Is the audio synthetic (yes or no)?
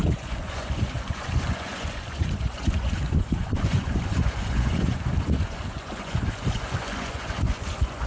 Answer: yes